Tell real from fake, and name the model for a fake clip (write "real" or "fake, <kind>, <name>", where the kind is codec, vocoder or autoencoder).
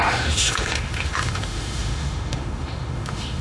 fake, autoencoder, DAC-VAE